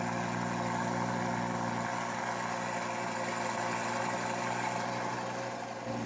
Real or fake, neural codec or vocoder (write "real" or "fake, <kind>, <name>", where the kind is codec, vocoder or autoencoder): real